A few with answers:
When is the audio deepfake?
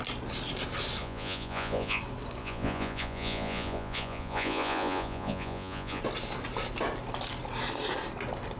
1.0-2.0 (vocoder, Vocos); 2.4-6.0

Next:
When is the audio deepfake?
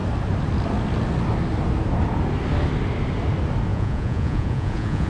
3.7-5.1 (vocoder, Vocos)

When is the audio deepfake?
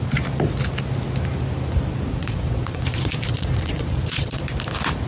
2.1-4.4 (vocoder, Vocos)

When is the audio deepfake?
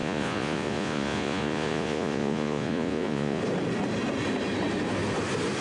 0.0-3.4 (vocoder, Vocos)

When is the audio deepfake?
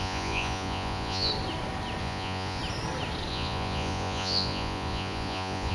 0.0-1.3 (vocoder, Vocos); 2.0-2.6; 3.3-5.7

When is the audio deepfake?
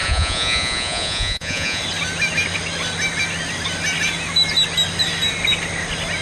0.0-1.8 (vocoder, Vocos)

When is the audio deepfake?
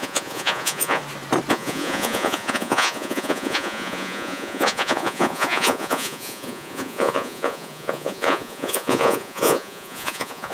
0.0-1.0 (vocoder, Vocos); 1.5-10.5